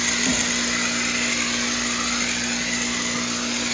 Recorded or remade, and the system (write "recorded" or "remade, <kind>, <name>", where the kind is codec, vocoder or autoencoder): recorded